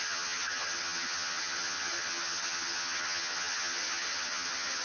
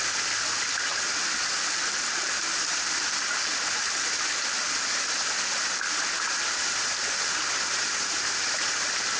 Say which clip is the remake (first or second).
first